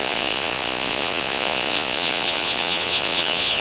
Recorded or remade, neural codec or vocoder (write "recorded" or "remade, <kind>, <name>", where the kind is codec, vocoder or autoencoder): remade, vocoder, Vocos